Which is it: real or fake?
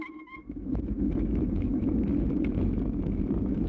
fake